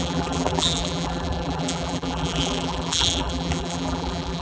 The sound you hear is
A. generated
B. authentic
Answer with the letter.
A